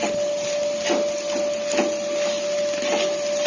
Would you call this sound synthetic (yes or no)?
no